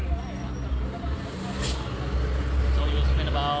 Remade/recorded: recorded